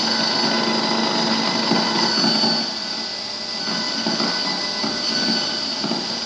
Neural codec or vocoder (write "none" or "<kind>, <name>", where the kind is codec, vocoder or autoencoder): none